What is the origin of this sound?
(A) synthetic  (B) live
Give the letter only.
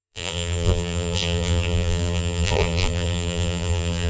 A